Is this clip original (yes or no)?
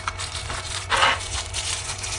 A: no